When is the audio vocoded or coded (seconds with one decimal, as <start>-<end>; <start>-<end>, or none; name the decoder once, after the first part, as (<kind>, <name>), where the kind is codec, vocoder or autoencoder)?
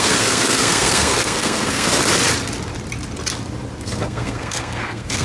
0.0-2.0 (codec, SNAC); 3.8-5.2